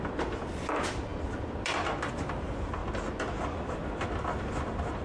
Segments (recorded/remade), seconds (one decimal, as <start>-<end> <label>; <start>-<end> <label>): 0.0-5.0 recorded